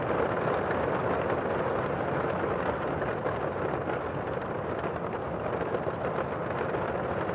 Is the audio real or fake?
real